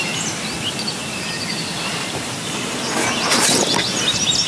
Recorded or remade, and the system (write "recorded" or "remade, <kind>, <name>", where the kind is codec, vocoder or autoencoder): recorded